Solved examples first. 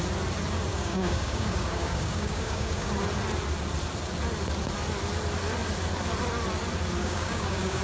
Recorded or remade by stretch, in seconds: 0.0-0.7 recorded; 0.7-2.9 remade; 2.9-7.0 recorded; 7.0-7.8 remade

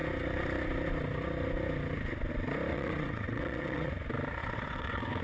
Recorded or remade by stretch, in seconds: 0.0-2.7 recorded; 2.7-3.9 remade; 3.9-4.4 recorded; 4.4-5.2 remade

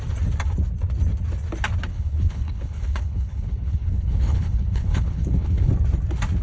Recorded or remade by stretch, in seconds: 0.0-1.9 recorded; 1.9-5.7 remade; 5.7-6.4 recorded